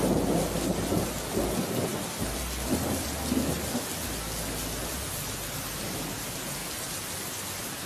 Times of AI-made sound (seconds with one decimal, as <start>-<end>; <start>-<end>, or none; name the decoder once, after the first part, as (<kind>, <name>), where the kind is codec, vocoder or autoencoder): none